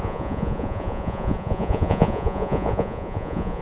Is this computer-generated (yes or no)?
yes